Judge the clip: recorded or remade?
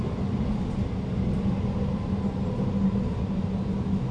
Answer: recorded